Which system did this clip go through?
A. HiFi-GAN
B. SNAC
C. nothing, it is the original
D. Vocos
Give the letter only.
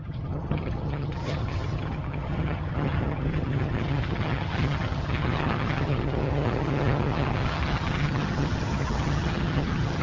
A